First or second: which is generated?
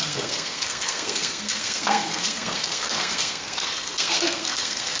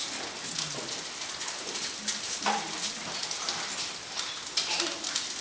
first